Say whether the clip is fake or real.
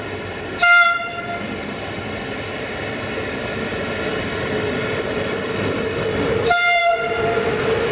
real